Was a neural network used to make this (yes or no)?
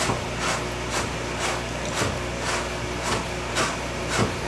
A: no